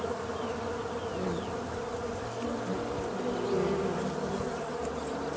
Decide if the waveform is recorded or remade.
recorded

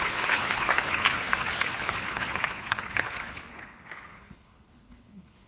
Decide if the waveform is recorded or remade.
remade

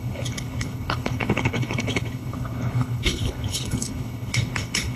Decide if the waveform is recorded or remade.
remade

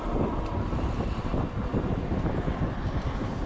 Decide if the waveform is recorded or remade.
recorded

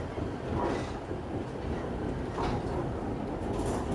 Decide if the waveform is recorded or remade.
recorded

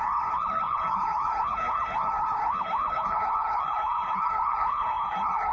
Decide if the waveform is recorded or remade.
remade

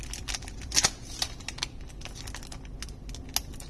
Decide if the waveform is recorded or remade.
recorded